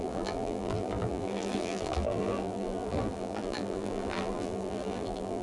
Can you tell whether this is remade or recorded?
remade